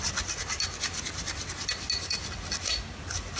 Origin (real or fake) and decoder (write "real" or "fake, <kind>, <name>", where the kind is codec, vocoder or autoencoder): real